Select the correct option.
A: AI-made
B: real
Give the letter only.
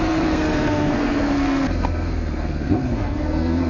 A